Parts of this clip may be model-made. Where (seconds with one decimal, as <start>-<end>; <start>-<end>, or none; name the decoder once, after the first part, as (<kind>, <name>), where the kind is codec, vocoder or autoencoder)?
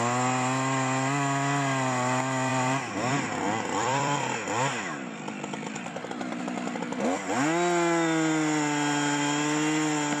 2.5-6.4 (vocoder, BigVGAN v2)